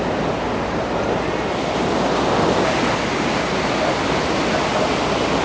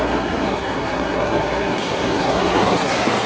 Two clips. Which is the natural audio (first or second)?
first